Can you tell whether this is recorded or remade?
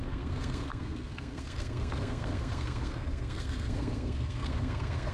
remade